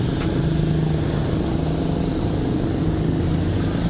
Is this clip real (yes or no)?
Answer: yes